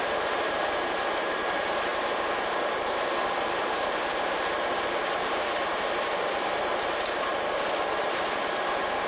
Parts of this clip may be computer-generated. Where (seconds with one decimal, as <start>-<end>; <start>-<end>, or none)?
0.0-7.3; 8.0-9.1